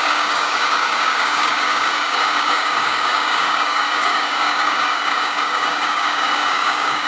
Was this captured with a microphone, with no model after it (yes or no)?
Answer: no